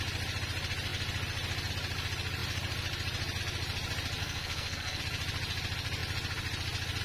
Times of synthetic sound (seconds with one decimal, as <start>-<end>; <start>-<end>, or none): 4.2-5.0